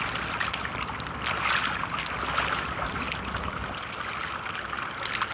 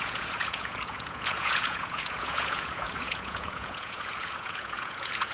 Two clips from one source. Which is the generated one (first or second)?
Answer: second